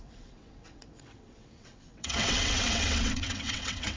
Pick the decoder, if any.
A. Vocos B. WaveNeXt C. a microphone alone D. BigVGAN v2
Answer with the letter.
B